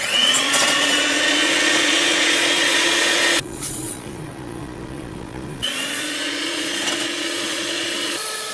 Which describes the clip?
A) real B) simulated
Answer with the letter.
B